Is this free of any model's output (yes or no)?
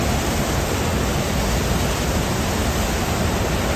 yes